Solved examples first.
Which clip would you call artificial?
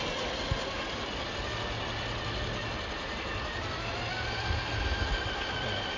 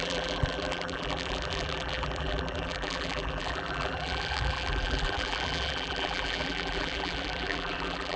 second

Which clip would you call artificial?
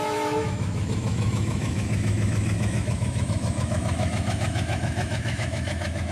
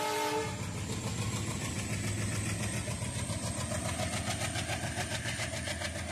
first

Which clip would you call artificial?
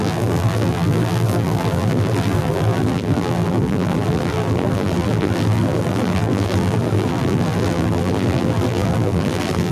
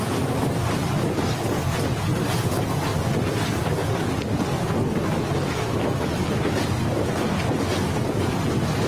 first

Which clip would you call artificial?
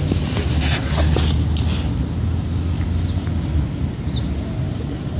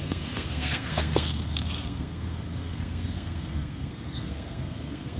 second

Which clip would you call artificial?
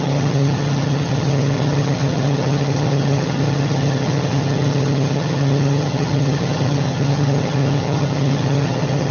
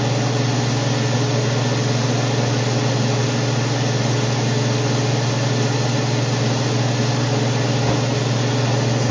first